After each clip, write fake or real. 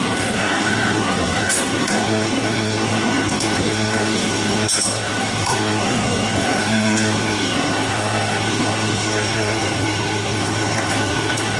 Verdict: fake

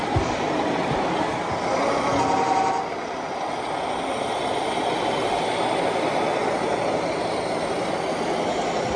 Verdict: real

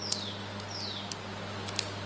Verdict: real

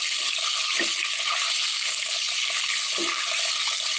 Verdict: real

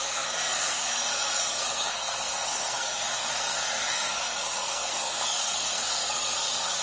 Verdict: fake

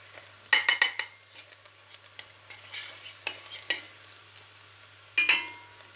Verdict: real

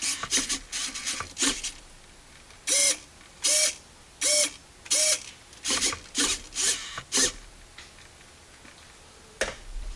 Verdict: real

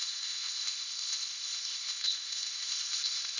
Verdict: fake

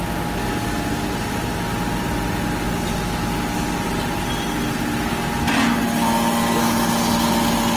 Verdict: real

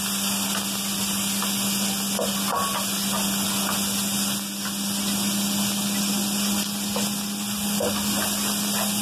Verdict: real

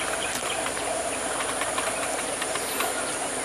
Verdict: fake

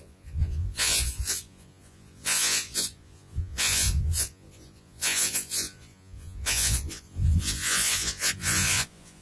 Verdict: fake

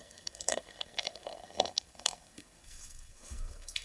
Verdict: fake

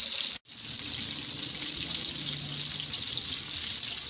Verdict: real